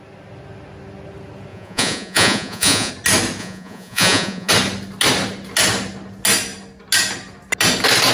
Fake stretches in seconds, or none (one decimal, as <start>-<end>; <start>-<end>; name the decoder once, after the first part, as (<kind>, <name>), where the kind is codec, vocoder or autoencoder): 1.5-2.9 (vocoder, Vocos); 3.4-4.5